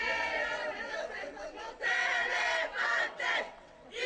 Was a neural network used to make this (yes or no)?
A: yes